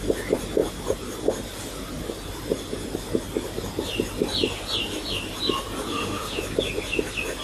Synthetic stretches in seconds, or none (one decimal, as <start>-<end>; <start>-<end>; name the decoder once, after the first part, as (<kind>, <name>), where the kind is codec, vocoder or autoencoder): 5.9-6.4 (autoencoder, DAC-VAE)

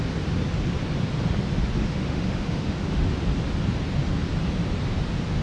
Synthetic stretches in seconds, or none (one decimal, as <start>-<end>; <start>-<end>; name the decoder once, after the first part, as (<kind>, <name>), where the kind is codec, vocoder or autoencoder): 1.8-3.1 (autoencoder, DAC-VAE)

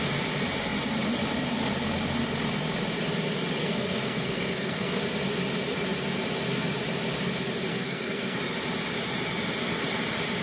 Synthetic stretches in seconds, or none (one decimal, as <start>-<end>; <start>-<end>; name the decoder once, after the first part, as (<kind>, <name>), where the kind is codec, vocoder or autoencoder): 3.6-5.0 (codec, SNAC); 7.7-8.4